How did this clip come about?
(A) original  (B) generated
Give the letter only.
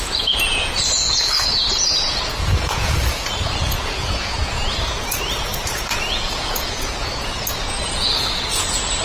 B